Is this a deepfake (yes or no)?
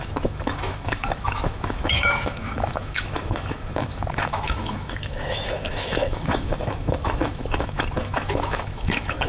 yes